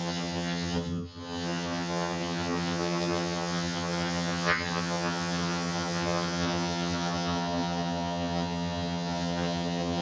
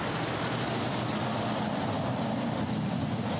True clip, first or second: second